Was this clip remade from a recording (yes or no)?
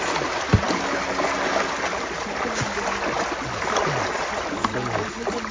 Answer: no